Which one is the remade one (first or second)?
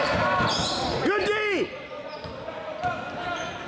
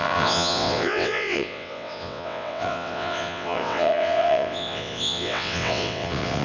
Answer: second